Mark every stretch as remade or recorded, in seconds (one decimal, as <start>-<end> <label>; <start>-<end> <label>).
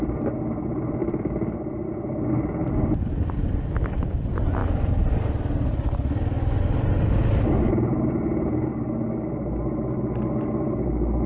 0.0-11.3 recorded